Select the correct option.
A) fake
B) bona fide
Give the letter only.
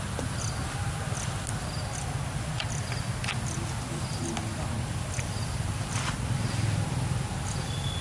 B